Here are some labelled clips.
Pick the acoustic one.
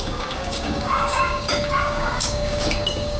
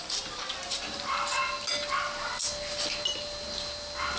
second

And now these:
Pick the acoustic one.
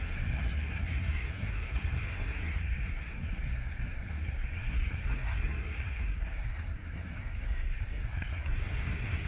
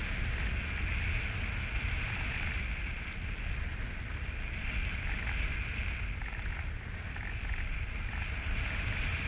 second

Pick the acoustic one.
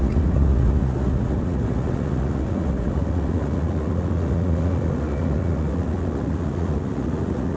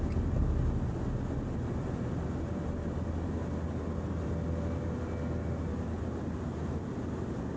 second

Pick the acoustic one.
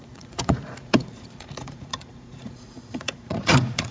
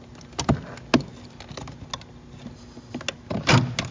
second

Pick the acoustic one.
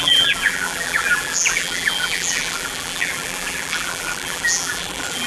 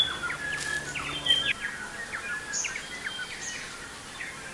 second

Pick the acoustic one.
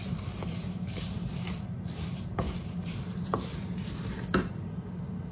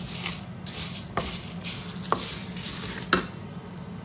second